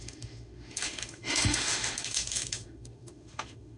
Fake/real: fake